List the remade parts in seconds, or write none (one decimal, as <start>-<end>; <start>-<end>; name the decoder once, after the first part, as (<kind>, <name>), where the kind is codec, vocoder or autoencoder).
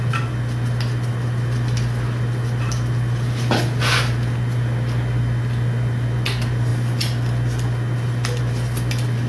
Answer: none